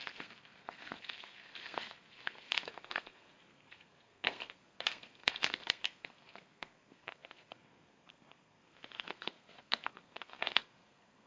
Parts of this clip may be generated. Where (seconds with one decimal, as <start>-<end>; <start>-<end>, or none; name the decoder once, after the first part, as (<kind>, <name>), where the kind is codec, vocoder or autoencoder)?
0.0-11.3 (codec, SNAC)